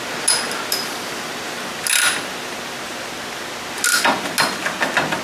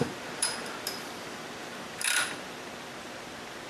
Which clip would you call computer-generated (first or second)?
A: second